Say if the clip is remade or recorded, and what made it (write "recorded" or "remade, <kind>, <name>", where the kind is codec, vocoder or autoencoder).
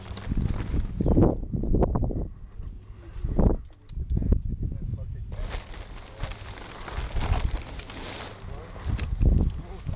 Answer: recorded